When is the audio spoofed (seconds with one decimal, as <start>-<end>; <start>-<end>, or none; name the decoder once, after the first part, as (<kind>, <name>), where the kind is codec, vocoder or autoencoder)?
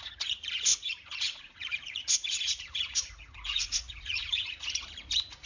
0.0-5.5 (vocoder, Vocos)